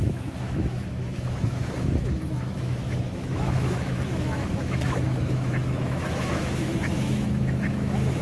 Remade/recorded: remade